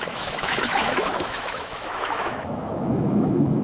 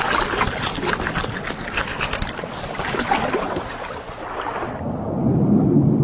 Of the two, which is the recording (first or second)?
second